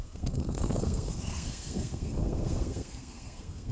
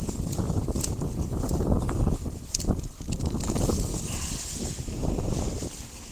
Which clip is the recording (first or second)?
second